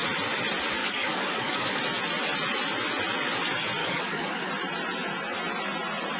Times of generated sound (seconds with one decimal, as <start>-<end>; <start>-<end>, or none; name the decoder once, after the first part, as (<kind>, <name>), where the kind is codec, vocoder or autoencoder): 0.8-1.8 (codec, DAC); 3.8-4.5